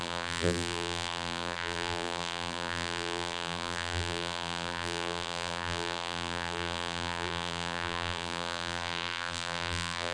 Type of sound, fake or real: fake